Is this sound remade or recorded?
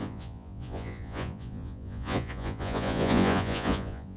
remade